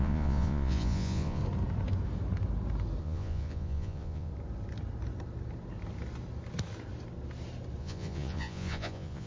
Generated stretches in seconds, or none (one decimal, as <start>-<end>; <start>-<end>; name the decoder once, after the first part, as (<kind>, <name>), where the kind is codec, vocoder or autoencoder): 0.0-1.4 (vocoder, Vocos); 3.0-4.3; 7.8-9.3